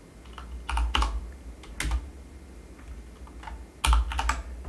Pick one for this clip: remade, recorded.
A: recorded